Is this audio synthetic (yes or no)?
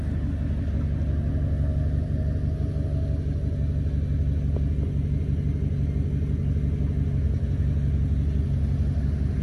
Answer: no